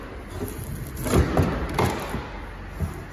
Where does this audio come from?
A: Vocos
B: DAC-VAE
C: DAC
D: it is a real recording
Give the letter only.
D